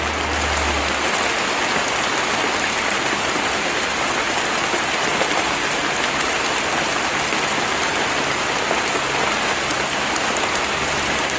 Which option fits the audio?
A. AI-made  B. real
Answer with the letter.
B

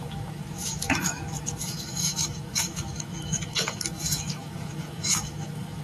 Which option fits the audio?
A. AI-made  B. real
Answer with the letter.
A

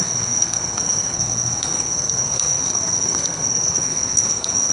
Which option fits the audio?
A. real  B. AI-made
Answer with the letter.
B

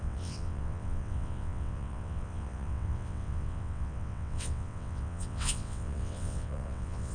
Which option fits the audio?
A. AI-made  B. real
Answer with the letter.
A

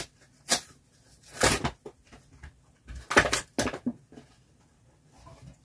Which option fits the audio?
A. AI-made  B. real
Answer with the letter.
B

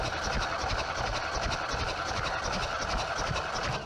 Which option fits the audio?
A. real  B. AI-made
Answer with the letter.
A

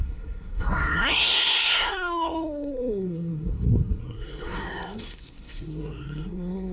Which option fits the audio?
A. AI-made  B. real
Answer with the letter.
A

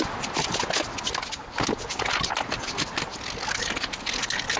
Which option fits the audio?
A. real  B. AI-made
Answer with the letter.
A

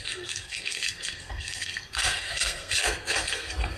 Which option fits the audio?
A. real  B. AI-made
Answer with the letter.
B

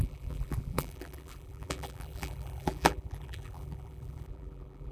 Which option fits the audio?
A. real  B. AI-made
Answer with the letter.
B